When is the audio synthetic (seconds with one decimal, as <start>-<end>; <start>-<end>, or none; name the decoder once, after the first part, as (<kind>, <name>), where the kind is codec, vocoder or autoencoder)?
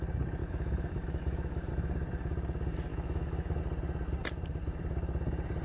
0.4-1.7 (autoencoder, DAC-VAE); 2.9-3.6